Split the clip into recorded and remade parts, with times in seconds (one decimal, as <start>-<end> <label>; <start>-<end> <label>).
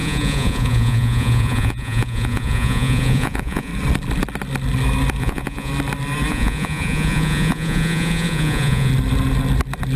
0.0-3.7 remade; 3.7-5.2 recorded; 5.2-5.7 remade; 5.7-6.3 recorded; 6.3-8.9 remade; 8.9-10.0 recorded